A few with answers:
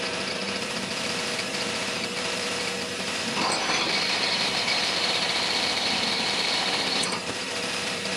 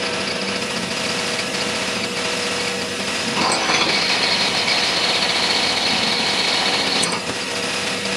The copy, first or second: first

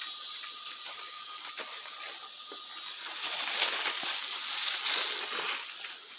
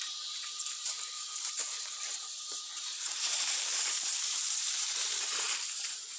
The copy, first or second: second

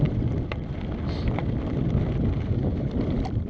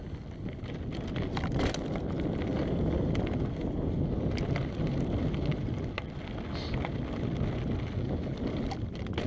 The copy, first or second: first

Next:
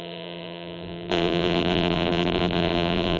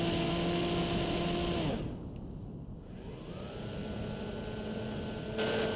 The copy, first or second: first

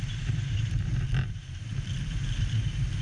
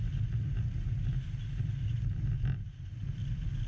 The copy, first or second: first